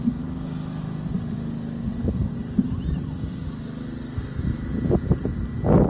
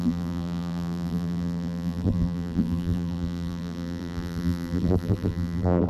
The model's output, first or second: second